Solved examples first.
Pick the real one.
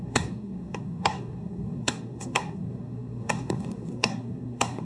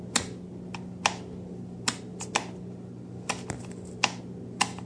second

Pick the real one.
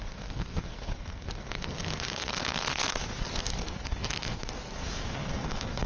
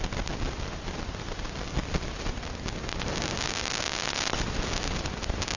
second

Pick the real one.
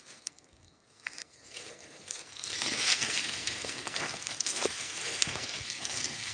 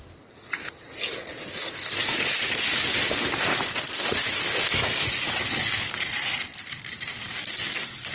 second